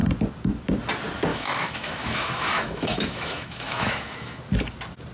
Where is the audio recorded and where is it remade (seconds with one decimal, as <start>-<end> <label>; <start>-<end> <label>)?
0.0-1.3 recorded; 1.3-4.4 remade; 4.4-5.1 recorded